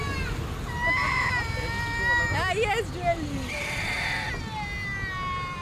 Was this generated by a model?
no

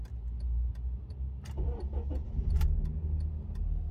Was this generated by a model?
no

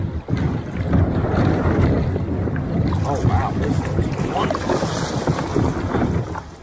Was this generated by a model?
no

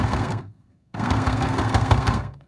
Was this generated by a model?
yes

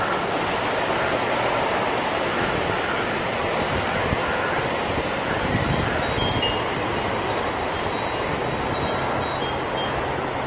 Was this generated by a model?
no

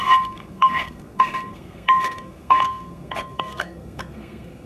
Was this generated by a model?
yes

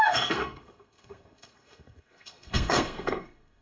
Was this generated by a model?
yes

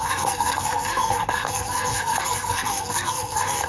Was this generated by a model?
yes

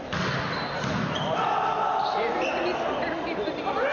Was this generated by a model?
no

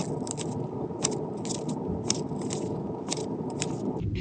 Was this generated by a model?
no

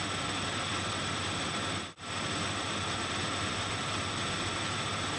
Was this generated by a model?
no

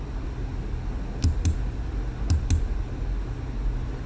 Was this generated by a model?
no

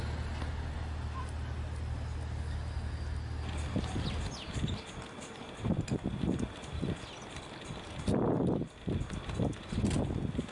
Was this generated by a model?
no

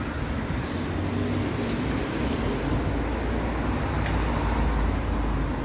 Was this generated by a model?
no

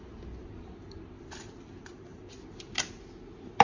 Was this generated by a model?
no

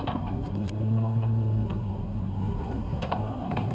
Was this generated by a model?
yes